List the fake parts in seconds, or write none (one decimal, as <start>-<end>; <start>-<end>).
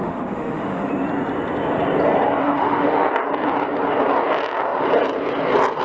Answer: 0.0-0.9; 2.4-3.1